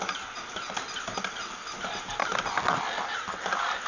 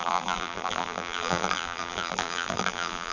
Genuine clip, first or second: first